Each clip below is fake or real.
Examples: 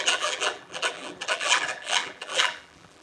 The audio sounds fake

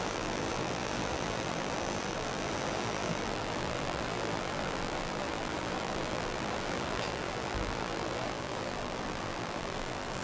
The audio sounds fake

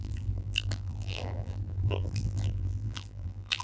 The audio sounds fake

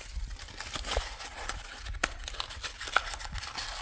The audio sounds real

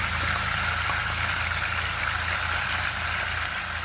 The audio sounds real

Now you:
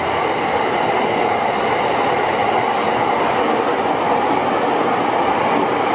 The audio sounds fake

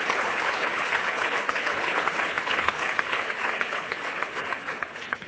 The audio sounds fake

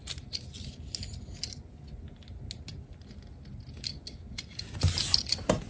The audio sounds real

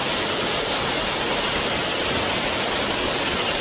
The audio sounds real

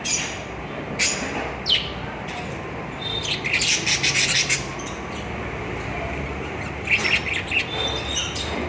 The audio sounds real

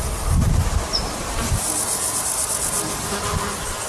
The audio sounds real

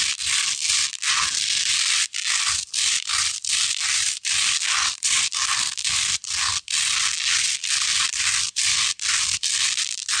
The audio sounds fake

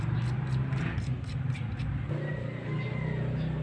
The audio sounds real